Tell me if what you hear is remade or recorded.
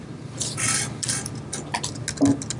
recorded